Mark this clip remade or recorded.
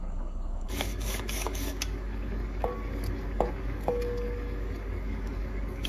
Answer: remade